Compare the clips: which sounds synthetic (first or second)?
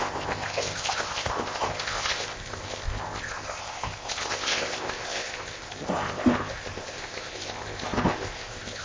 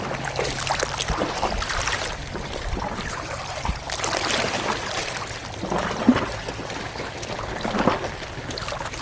first